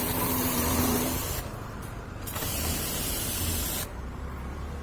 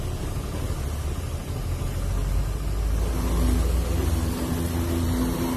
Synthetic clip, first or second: first